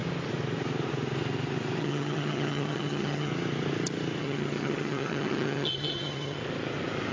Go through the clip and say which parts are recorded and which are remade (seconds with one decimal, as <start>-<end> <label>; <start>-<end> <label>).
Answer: 0.0-1.8 recorded; 1.8-3.3 remade; 3.3-4.2 recorded; 4.2-6.4 remade; 6.4-7.1 recorded